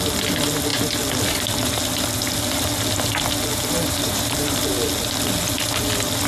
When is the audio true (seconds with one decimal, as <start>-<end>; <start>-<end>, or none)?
0.0-3.5; 4.6-6.3